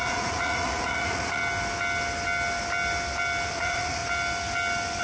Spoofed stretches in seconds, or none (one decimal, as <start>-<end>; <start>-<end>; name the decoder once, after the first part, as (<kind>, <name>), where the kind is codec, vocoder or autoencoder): 0.0-1.4 (vocoder, Vocos); 3.5-4.0